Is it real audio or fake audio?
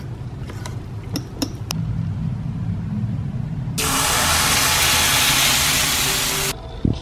real